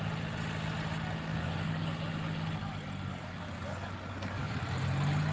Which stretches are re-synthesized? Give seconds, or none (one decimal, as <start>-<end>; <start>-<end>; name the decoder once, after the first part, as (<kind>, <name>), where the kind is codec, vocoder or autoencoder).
1.3-2.0 (codec, DAC); 3.1-4.5